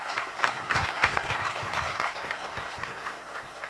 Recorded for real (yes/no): no